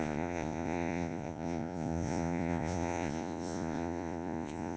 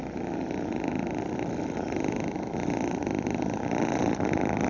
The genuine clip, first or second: second